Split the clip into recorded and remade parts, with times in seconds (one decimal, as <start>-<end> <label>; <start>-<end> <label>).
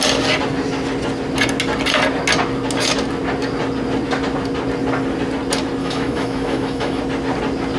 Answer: 0.0-5.8 recorded; 5.8-7.0 remade; 7.0-7.8 recorded